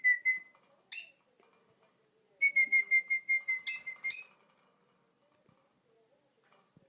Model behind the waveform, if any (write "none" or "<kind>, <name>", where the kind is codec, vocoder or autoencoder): none